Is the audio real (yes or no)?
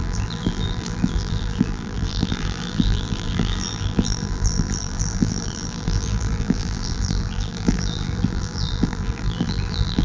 no